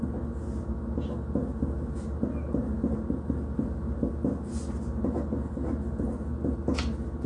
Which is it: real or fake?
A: real